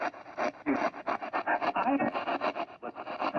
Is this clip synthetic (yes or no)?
no